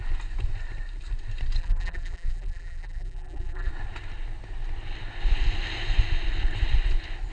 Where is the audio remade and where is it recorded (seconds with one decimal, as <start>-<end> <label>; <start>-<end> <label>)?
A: 0.0-1.6 recorded; 1.6-3.7 remade; 3.7-7.3 recorded